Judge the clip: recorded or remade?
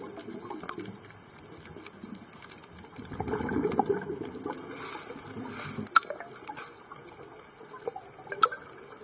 recorded